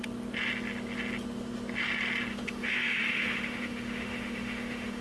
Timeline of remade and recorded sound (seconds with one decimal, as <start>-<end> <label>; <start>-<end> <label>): 0.0-2.3 recorded; 2.3-5.0 remade